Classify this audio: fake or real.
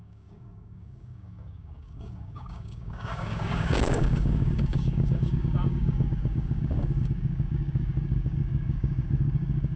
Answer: fake